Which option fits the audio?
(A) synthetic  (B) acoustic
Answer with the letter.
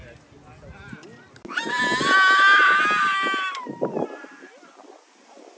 B